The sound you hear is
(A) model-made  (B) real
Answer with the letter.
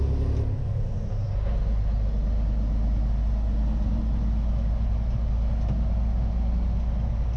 B